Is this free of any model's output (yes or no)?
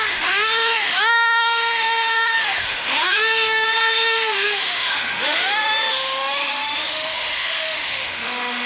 no